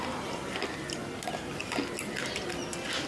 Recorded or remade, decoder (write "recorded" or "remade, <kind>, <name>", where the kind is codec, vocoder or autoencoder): recorded